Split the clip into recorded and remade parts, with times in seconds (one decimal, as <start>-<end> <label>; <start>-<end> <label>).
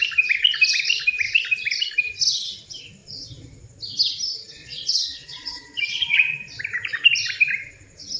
0.0-4.6 recorded; 4.6-6.6 remade; 6.6-8.2 recorded